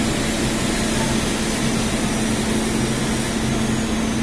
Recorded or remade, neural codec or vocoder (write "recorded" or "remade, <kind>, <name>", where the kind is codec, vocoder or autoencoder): recorded